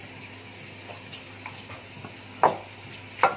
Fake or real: real